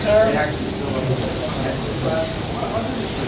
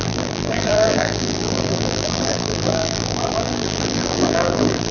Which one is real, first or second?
first